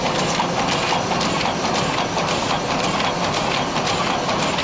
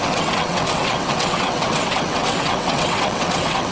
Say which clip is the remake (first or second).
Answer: second